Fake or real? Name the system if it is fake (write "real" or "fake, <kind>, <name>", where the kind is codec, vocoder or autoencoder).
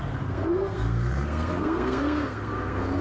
fake, codec, SNAC